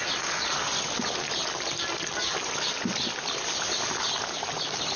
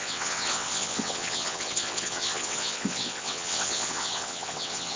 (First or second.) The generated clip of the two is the second